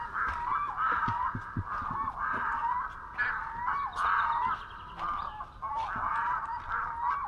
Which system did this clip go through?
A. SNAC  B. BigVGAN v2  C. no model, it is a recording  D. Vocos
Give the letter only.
C